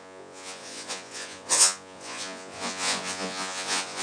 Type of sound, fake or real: fake